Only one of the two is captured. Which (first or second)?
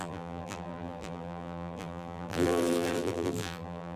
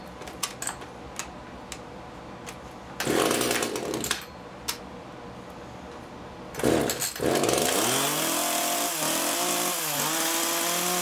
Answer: second